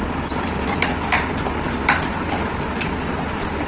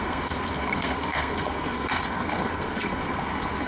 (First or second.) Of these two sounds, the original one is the first